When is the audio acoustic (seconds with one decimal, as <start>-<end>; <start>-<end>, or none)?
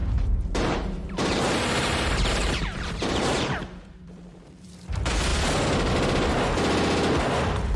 4.7-7.8